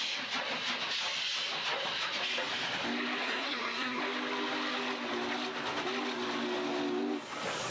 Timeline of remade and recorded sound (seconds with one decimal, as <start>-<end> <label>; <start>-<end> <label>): 0.0-3.2 recorded; 3.2-4.0 remade; 4.0-7.7 recorded